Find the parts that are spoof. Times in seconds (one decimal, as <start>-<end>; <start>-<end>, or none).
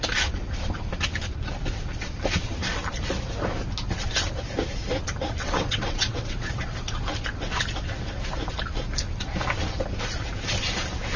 5.4-6.5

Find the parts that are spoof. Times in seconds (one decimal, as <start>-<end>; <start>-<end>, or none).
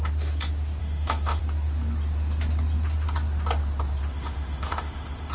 0.8-1.4; 4.1-5.3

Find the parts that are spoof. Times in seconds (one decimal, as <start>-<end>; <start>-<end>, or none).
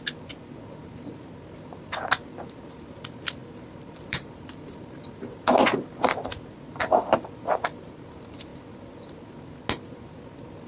3.4-4.8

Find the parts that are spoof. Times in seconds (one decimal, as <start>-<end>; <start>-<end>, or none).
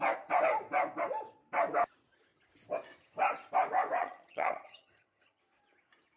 4.0-5.4